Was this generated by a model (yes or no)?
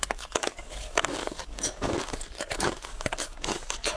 yes